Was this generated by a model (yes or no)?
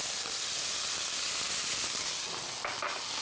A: no